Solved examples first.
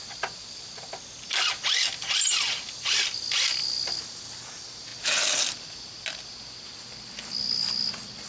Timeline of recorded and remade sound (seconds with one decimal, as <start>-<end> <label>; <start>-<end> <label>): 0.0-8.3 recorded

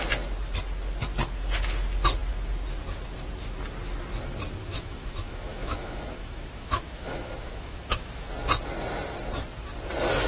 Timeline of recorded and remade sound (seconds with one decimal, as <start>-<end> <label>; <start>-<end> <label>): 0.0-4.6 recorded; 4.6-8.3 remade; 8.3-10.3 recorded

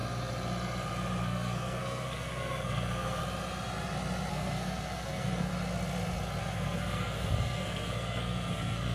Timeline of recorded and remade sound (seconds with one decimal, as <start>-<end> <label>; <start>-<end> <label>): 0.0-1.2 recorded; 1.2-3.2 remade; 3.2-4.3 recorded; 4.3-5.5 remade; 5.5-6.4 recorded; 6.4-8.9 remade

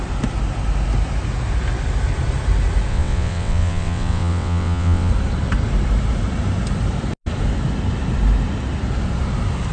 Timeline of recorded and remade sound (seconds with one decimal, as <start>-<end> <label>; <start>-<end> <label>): 0.0-2.9 recorded; 2.9-5.1 remade; 5.1-9.7 recorded